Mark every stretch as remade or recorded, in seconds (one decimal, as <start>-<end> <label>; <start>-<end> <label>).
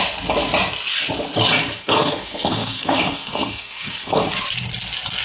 0.0-1.8 recorded; 1.8-4.2 remade; 4.2-5.2 recorded